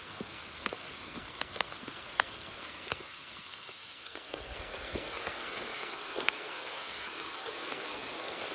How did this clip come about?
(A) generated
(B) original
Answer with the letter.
A